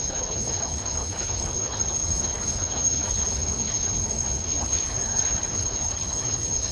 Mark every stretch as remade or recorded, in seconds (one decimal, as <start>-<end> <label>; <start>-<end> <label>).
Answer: 0.0-6.7 remade